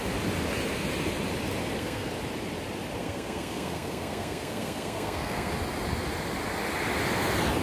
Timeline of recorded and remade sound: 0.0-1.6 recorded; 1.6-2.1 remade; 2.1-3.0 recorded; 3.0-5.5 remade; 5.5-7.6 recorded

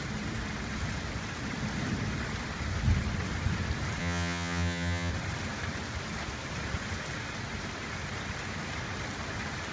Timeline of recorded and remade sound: 0.0-4.0 recorded; 4.0-5.1 remade; 5.1-9.7 recorded

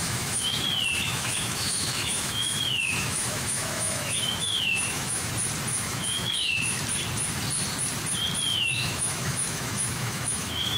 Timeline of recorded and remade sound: 0.0-0.6 remade; 0.6-1.1 recorded; 1.1-5.3 remade; 5.3-5.7 recorded; 5.7-6.8 remade; 6.8-8.5 recorded; 8.5-10.8 remade

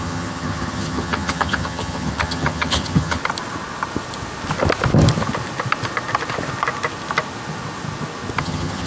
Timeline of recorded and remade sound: 0.0-3.2 remade; 3.2-8.4 recorded; 8.4-8.9 remade

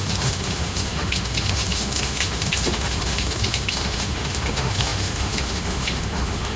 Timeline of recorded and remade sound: 0.0-6.6 remade